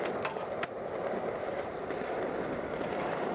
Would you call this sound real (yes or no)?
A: yes